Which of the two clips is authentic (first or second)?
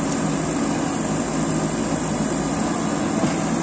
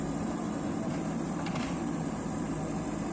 first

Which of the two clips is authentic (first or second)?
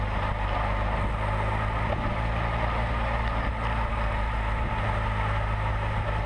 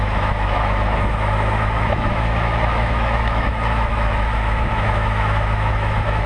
first